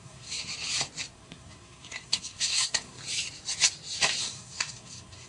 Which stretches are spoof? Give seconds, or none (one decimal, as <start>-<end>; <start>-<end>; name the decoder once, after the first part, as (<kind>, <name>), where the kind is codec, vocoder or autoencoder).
0.0-0.5 (codec, SNAC); 1.1-3.0; 4.2-5.3